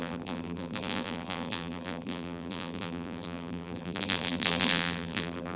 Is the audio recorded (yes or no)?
no